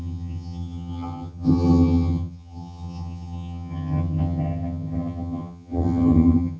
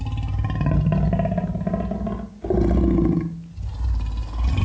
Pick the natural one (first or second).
second